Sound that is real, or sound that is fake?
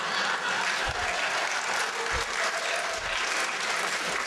real